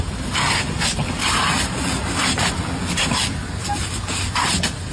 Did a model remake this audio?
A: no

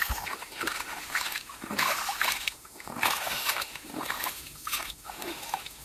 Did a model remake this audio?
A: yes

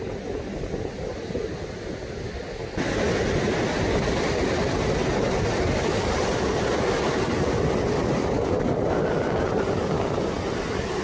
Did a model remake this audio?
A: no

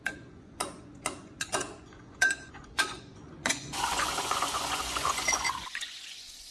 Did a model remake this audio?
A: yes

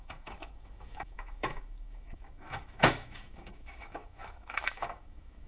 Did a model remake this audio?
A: yes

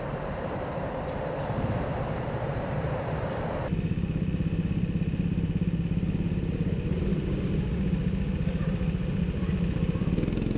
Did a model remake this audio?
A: yes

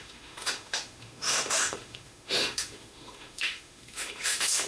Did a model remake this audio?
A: yes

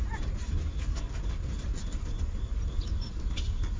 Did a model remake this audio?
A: no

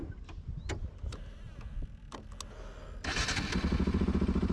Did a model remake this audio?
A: no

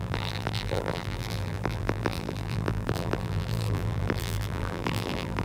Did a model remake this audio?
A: yes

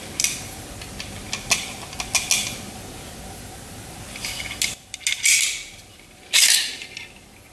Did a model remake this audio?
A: no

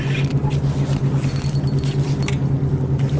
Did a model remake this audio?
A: no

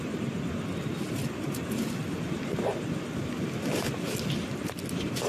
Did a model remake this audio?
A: no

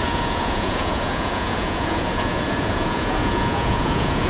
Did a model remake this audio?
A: yes